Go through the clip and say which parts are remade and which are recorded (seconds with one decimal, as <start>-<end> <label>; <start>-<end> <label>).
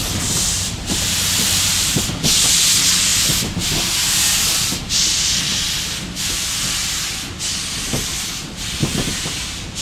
0.0-2.0 remade; 2.0-9.8 recorded